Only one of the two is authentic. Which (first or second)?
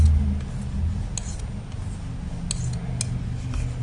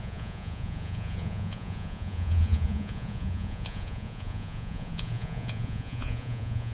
first